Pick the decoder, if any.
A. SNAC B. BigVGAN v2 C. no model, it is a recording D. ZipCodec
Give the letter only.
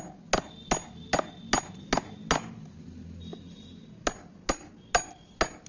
C